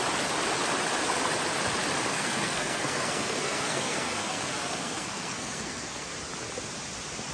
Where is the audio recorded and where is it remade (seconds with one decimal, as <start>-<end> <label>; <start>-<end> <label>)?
0.0-2.1 recorded; 2.1-6.1 remade; 6.1-7.3 recorded